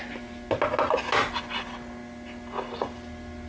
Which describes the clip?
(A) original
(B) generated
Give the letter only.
A